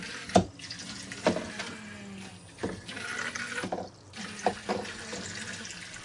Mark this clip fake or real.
real